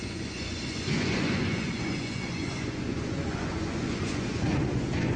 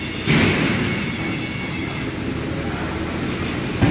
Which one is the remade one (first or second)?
first